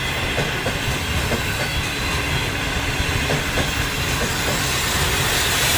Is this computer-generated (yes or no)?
no